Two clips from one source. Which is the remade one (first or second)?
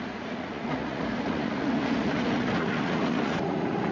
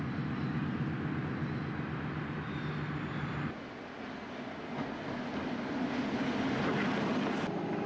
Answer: first